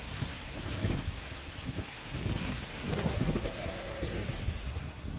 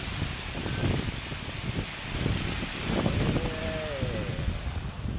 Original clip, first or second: second